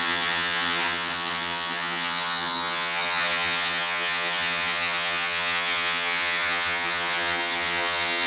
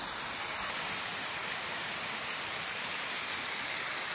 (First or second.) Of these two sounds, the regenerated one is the first